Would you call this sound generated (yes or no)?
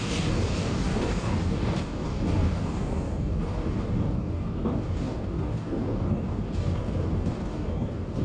yes